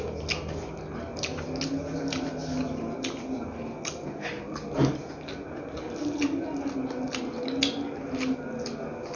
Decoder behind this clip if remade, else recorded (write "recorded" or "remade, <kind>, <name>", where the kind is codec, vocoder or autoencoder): recorded